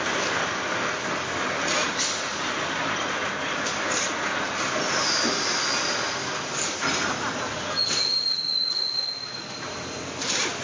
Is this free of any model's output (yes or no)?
yes